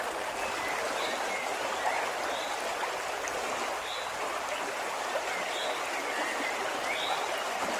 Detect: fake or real real